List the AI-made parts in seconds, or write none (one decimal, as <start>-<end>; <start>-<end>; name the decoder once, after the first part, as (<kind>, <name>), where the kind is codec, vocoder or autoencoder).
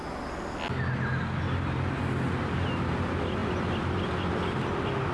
none